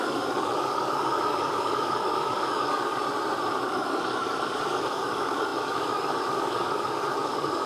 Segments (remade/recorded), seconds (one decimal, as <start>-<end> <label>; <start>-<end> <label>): 0.0-2.9 remade; 2.9-3.6 recorded; 3.6-7.7 remade